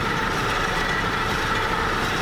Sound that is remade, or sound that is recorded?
remade